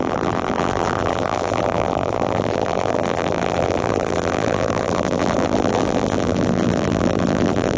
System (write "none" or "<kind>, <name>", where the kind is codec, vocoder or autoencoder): vocoder, BigVGAN v2